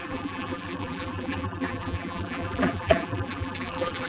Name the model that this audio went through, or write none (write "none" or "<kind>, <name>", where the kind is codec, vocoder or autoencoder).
vocoder, BigVGAN v2